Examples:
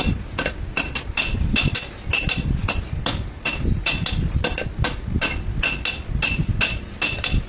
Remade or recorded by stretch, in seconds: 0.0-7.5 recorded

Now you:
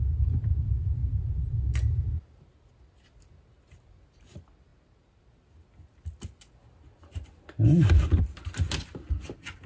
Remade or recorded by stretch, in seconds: 0.0-9.7 recorded

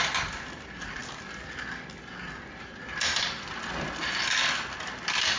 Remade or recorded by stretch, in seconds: 0.0-5.4 recorded

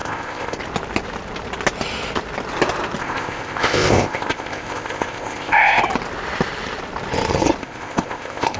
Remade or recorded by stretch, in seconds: 0.0-0.6 remade; 0.6-3.0 recorded; 3.0-5.8 remade; 5.8-7.6 recorded; 7.6-8.6 remade

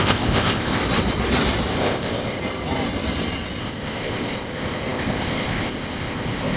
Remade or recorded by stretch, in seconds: 0.0-0.8 remade; 0.8-1.7 recorded; 1.7-2.4 remade; 2.4-3.6 recorded; 3.6-6.6 remade

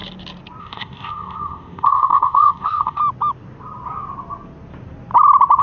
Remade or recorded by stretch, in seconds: 0.0-0.6 recorded; 0.6-3.0 remade; 3.0-5.6 recorded

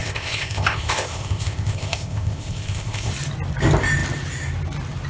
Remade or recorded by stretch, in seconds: 0.0-3.1 remade; 3.1-5.1 recorded

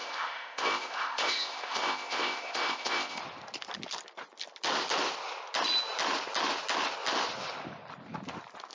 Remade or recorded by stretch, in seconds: 0.0-3.2 remade; 3.2-8.7 recorded